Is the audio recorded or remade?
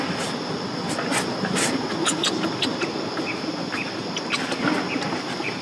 recorded